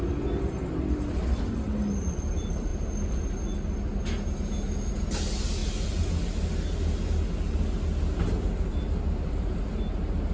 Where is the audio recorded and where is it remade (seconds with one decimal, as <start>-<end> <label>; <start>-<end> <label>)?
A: 0.0-8.7 recorded; 8.7-9.7 remade; 9.7-10.3 recorded